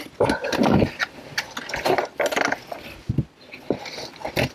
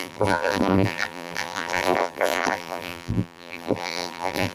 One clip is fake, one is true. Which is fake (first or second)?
second